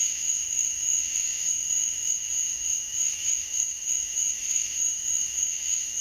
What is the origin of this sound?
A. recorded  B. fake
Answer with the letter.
B